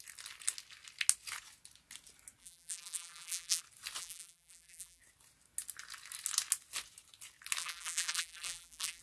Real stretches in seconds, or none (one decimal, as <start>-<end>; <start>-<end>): 0.0-2.4; 3.6-4.0; 5.0-7.6